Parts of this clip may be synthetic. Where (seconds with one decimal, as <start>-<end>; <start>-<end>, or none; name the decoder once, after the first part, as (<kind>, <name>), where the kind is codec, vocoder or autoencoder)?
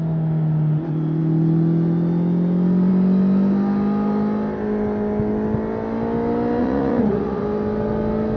6.6-7.4 (vocoder, Vocos)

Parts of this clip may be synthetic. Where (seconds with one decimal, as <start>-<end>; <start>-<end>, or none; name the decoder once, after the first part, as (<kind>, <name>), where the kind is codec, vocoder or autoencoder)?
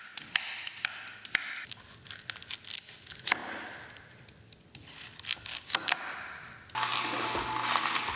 5.5-6.0 (codec, DAC)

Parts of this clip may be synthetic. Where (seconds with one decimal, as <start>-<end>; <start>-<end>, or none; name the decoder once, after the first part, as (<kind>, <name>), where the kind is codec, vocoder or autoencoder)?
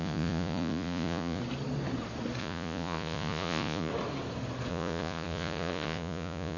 0.0-1.4 (vocoder, Vocos); 2.4-3.9; 4.7-6.6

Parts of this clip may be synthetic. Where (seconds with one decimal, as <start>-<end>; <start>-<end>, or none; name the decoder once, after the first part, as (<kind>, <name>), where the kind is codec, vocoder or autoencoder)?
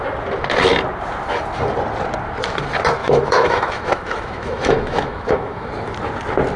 3.0-5.7 (autoencoder, DAC-VAE)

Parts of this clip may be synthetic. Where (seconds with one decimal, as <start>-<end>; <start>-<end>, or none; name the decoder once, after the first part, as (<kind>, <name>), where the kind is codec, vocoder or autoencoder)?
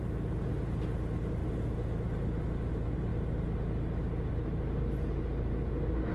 none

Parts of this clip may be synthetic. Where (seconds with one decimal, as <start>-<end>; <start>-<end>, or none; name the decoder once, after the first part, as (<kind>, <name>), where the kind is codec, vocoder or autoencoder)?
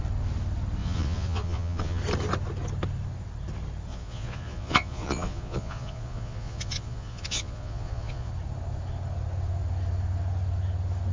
0.8-2.0 (vocoder, Vocos); 3.9-8.3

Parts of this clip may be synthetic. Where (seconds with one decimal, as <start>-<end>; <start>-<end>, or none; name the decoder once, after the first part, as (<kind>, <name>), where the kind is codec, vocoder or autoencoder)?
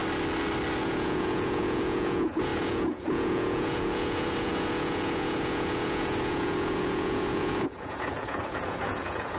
0.8-9.4 (vocoder, Vocos)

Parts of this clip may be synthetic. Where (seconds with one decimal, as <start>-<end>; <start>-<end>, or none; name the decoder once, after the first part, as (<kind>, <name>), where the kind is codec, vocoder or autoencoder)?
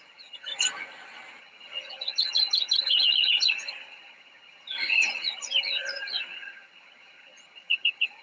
0.0-0.5 (vocoder, HiFi-GAN); 1.4-8.2